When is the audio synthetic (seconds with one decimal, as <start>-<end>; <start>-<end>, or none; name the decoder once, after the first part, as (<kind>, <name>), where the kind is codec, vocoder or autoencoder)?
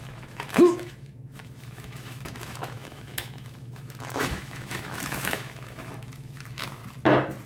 0.0-6.8 (autoencoder, DAC-VAE)